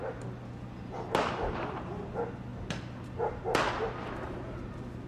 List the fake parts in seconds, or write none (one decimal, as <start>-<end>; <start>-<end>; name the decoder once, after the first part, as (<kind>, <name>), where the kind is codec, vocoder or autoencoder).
none